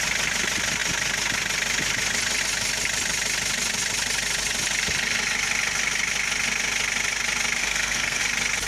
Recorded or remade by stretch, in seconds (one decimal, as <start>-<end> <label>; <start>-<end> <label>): 0.0-7.6 recorded; 7.6-8.2 remade; 8.2-8.7 recorded